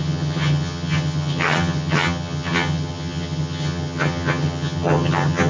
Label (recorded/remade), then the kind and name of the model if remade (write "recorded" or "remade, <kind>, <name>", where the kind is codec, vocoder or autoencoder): remade, vocoder, HiFi-GAN